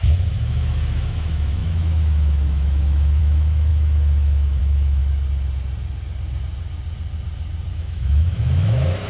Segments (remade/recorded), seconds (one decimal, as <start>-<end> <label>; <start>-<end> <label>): 0.0-5.0 remade; 5.0-7.7 recorded; 7.7-9.1 remade